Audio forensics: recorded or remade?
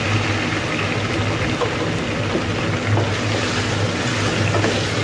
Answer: recorded